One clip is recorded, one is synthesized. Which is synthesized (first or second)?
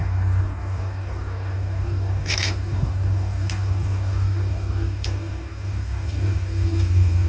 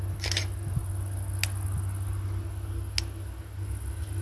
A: first